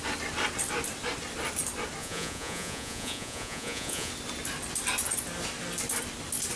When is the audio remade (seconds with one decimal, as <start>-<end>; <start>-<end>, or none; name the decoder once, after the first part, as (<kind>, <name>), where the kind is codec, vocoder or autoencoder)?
2.0-4.1 (vocoder, Vocos)